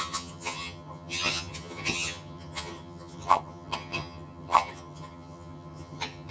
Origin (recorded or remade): remade